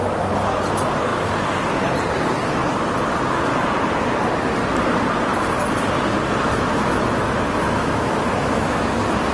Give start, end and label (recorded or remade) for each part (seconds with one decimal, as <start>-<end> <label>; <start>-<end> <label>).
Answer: 0.0-6.5 recorded; 6.5-8.8 remade; 8.8-9.3 recorded